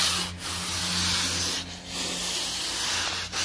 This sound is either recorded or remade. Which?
recorded